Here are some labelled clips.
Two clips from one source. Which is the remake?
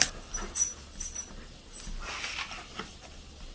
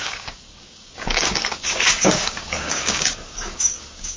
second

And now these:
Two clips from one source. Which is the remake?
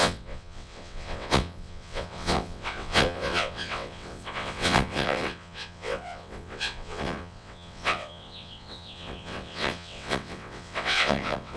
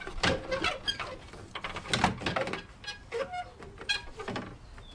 first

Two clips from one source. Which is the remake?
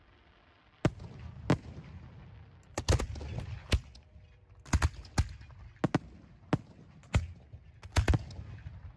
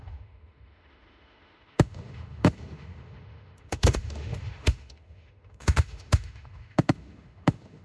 second